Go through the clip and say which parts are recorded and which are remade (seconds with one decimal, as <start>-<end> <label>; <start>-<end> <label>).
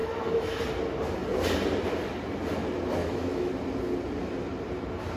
0.0-0.6 remade; 0.6-3.0 recorded; 3.0-3.5 remade; 3.5-5.2 recorded